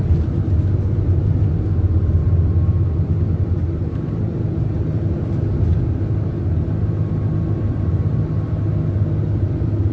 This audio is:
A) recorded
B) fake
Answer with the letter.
B